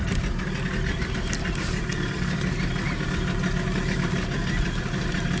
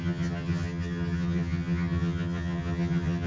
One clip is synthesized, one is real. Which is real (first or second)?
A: first